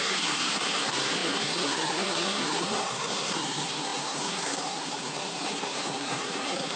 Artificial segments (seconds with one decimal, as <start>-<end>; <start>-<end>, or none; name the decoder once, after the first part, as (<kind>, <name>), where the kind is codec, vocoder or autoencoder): 0.0-6.8 (codec, SNAC)